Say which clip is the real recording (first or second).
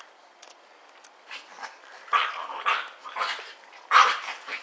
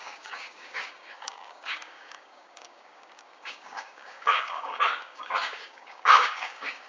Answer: first